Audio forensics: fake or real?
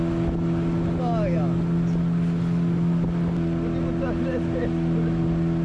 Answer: real